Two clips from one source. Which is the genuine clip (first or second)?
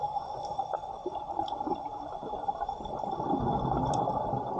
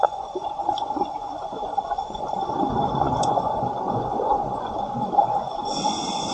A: first